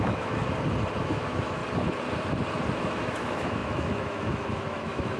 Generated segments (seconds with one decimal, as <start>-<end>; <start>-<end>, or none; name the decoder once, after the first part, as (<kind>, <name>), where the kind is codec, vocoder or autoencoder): 0.0-0.4 (autoencoder, DAC-VAE); 1.0-1.6; 2.8-5.2